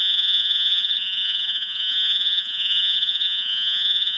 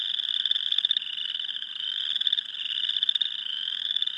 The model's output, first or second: first